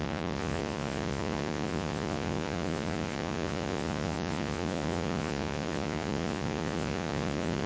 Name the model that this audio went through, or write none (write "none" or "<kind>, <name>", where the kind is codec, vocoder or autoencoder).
vocoder, Vocos